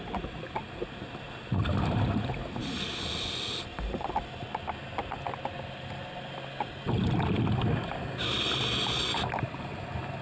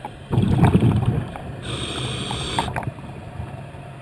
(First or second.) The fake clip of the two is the second